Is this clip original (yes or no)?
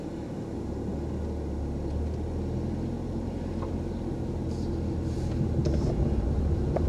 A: yes